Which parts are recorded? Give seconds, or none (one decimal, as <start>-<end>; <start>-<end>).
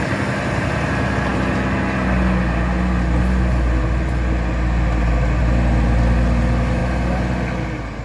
0.0-8.0